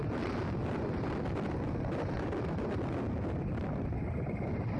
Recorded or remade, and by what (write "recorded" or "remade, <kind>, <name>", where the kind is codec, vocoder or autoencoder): recorded